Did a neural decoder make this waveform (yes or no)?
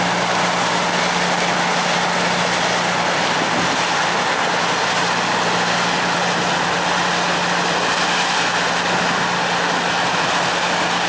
no